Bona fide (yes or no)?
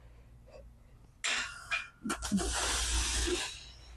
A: yes